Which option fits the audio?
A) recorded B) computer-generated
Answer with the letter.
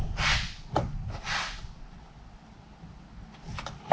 A